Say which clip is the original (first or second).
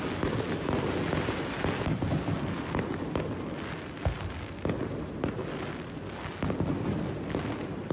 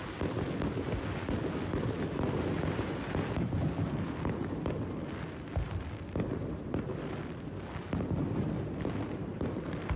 first